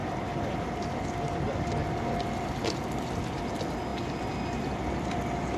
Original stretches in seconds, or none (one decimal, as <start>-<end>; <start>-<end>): 0.0-5.6